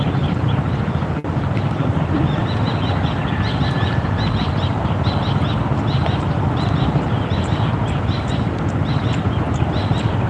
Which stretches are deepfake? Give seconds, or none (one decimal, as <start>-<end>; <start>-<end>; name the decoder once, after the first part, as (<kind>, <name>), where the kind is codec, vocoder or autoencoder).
none